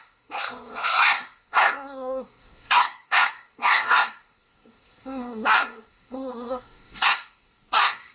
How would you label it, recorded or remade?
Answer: remade